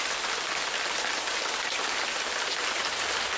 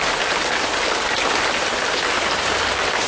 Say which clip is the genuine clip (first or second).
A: first